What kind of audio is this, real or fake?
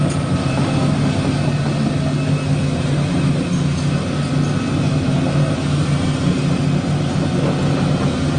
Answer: real